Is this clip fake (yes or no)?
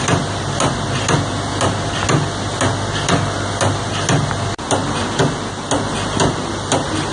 no